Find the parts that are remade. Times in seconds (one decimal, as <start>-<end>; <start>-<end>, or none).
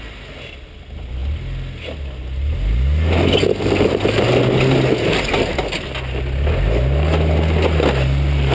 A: none